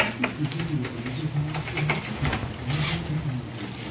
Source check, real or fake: real